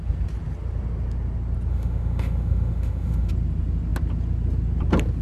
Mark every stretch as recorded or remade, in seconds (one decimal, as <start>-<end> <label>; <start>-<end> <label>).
0.0-1.7 recorded; 1.7-3.3 remade; 3.3-5.2 recorded